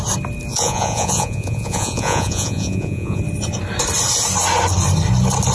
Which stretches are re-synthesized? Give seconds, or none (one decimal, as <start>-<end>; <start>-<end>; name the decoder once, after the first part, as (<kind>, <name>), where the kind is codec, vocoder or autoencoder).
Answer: 0.5-3.2 (vocoder, Vocos)